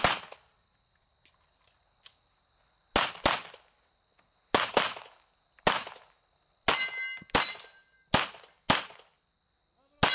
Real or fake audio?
real